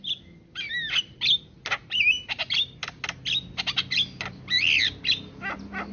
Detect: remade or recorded recorded